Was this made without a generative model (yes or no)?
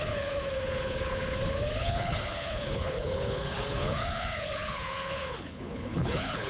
no